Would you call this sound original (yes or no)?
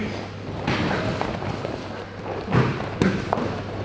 yes